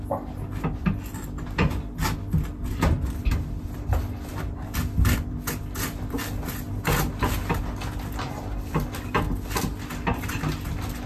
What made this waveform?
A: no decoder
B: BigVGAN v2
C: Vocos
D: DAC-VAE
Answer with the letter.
A